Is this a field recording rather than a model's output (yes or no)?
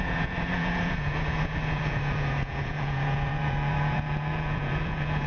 no